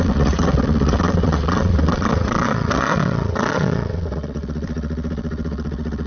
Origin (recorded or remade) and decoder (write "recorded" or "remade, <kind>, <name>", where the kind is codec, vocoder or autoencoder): remade, vocoder, WaveNeXt